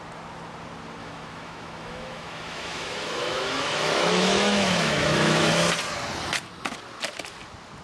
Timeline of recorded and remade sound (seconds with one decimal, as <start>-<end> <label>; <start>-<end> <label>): 0.0-1.0 recorded; 1.0-5.5 remade; 5.5-7.8 recorded